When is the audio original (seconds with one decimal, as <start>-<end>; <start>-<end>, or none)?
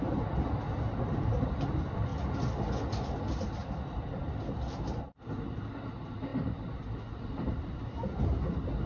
2.1-3.1